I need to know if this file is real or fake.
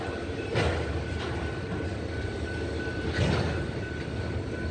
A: real